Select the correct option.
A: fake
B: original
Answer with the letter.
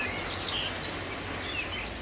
B